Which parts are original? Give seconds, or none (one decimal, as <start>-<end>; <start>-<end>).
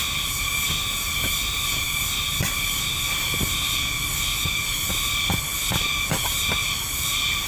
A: 0.0-7.5